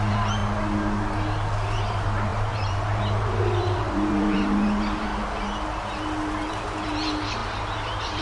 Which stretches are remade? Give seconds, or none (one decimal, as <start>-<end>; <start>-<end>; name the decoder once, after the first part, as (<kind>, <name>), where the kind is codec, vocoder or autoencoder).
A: 0.0-0.4 (vocoder, BigVGAN v2); 1.9-5.1; 6.5-8.2